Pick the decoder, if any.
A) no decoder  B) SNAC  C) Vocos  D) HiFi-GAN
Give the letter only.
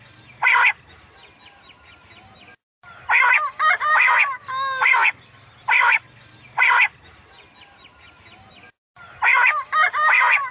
A